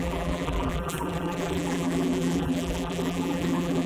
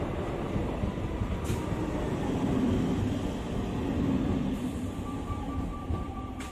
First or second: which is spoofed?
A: first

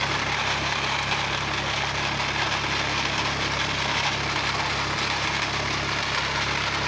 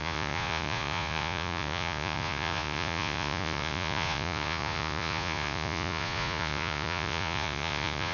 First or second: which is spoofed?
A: second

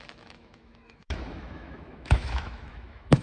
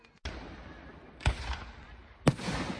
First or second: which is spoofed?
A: first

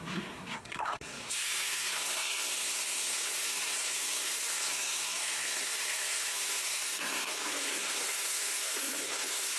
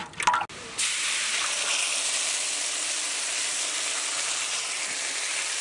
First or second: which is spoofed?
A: first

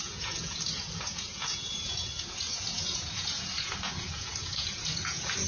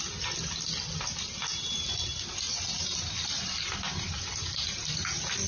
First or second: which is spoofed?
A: first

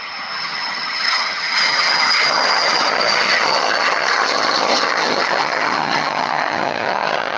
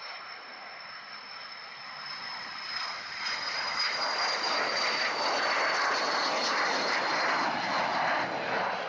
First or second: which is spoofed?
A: first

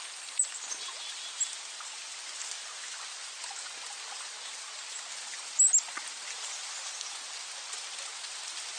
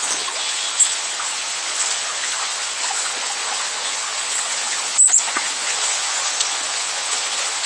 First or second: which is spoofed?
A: second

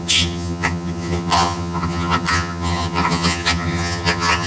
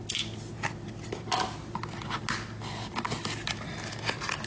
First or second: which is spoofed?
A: first